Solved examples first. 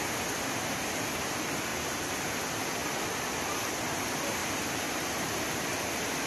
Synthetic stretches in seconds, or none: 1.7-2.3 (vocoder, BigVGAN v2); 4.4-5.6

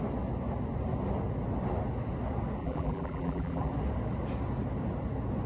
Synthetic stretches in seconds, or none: 2.6-3.7 (vocoder, BigVGAN v2)

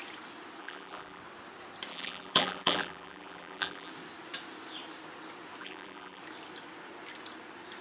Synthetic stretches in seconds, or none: 0.6-1.2 (vocoder, BigVGAN v2); 1.9-3.9; 5.6-6.2

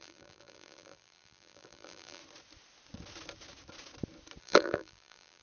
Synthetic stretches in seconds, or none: 0.0-2.2 (vocoder, BigVGAN v2); 4.4-5.4

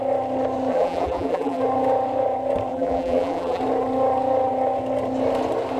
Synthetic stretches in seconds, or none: 0.7-1.6 (vocoder, BigVGAN v2); 2.7-3.6

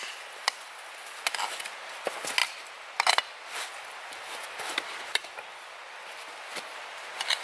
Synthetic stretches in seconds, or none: none

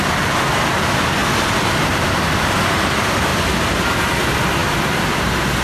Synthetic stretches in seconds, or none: 0.0-1.2 (vocoder, BigVGAN v2); 1.9-3.3; 4.1-5.6

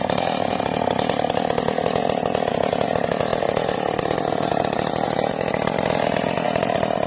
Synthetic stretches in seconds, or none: none